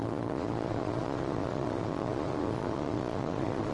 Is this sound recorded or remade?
remade